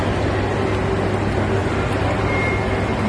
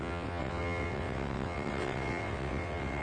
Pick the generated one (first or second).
second